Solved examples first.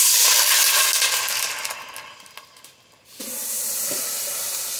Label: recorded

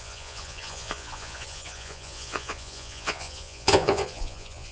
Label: remade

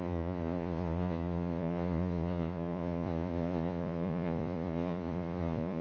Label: remade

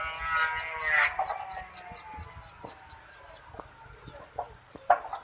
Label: recorded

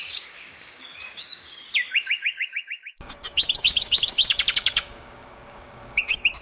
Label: remade